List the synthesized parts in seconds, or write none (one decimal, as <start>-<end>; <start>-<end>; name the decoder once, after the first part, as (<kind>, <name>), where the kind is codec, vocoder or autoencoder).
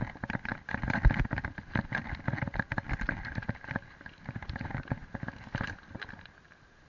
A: none